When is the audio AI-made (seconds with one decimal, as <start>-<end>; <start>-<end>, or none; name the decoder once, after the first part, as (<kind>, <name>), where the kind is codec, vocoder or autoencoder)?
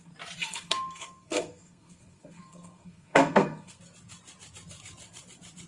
0.4-3.8 (codec, SNAC)